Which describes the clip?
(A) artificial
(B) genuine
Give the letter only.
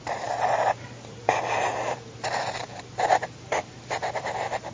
A